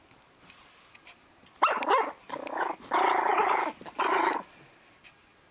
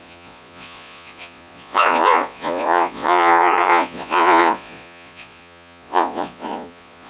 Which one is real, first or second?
first